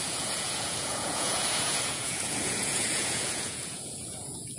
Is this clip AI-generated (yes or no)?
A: yes